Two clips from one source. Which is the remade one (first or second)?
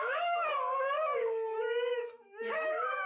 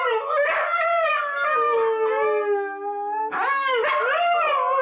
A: first